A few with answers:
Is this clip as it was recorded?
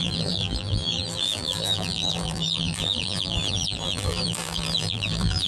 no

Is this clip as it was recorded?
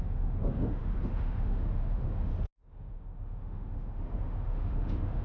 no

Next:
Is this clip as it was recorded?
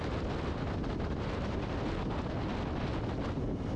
yes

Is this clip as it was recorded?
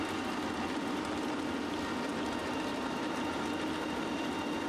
yes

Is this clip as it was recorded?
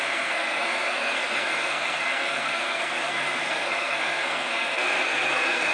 no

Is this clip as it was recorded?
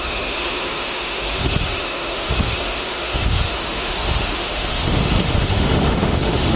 no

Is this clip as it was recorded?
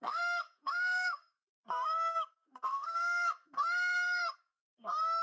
no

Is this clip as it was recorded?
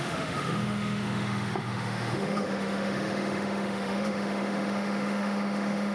no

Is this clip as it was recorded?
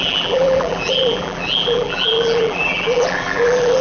no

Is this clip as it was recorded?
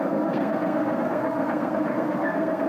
no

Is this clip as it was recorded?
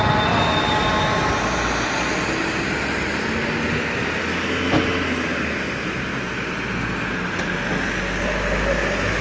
yes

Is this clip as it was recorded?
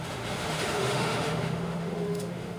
no